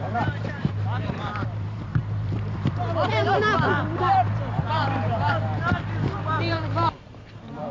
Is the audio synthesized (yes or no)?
yes